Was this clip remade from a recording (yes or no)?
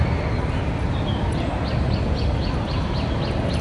no